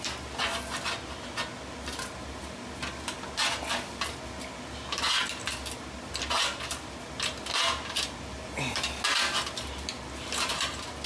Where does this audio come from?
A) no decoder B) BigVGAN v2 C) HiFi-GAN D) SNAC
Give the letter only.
A